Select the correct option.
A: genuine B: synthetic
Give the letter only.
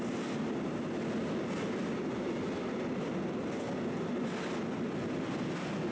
A